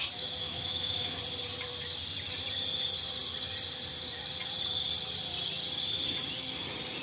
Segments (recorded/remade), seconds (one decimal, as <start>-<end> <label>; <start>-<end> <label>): 0.0-0.4 recorded; 0.4-1.2 remade; 1.2-7.0 recorded